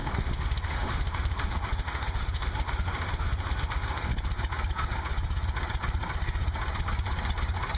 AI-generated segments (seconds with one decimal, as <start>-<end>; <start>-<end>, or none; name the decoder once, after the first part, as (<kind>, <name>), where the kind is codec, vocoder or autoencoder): 0.0-4.1 (autoencoder, DAC-VAE)